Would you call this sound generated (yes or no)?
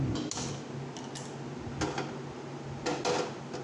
no